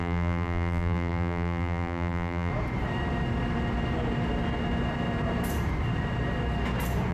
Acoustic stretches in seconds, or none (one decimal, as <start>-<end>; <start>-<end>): 2.5-7.1